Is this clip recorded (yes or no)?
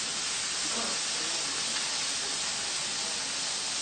yes